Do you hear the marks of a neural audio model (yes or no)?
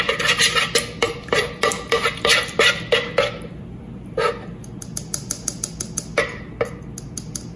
no